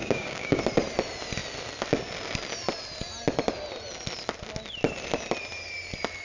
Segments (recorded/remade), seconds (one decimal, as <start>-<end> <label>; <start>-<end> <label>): 0.0-0.6 remade; 0.6-6.2 recorded